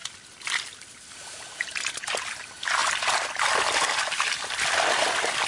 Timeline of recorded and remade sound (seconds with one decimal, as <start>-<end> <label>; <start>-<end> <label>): 0.0-2.8 recorded; 2.8-3.5 remade; 3.5-5.5 recorded